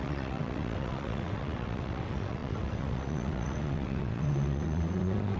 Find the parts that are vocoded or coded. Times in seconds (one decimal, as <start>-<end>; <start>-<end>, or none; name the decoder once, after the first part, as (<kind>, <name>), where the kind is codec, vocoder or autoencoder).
0.0-5.4 (vocoder, WaveNeXt)